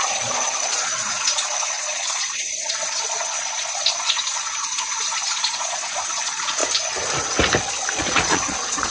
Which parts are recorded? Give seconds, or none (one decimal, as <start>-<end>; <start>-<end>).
6.6-7.9